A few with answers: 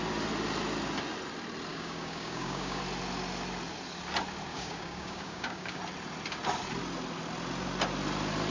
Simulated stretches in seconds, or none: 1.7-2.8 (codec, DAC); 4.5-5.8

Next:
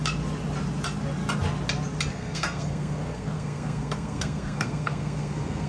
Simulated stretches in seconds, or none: 2.1-5.7 (codec, SNAC)

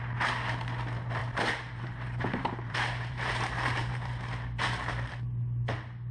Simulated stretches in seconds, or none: 1.2-4.2 (vocoder, BigVGAN v2)

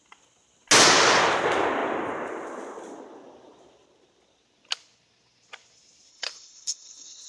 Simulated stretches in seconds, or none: 6.1-7.3 (codec, HILCodec)

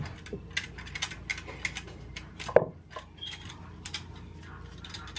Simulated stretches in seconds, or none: none

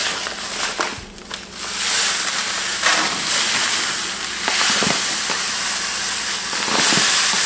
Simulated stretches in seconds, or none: none